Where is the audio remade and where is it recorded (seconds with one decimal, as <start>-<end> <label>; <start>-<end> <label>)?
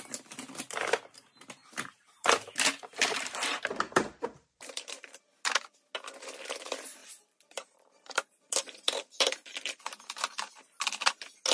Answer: 0.0-1.6 recorded; 1.6-5.2 remade; 5.2-7.0 recorded; 7.0-10.6 remade; 10.6-11.5 recorded